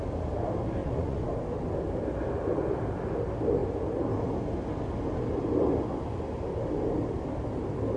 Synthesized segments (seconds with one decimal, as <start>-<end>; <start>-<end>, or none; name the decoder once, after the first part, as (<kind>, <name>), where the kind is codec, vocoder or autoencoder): 0.8-1.3 (vocoder, Vocos)